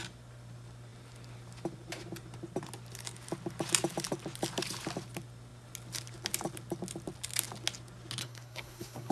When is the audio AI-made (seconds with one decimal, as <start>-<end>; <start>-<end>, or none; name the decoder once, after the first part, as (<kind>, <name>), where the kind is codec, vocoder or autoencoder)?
8.2-9.1 (codec, SNAC)